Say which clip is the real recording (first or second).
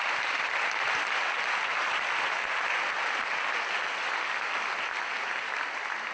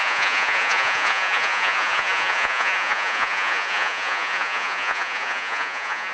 first